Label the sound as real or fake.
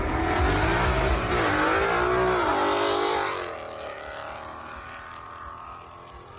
real